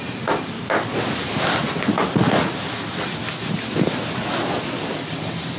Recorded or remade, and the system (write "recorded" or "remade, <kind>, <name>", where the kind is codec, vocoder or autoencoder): recorded